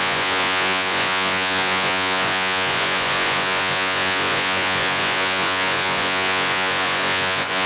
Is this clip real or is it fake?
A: fake